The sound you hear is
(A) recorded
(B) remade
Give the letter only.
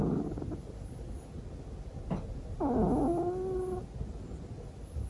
A